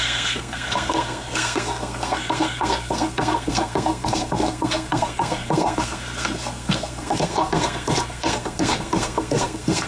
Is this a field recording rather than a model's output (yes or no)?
no